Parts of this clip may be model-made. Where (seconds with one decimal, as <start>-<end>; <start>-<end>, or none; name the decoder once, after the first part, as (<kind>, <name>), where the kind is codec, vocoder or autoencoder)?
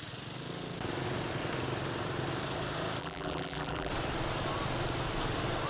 3.0-3.9 (vocoder, BigVGAN v2)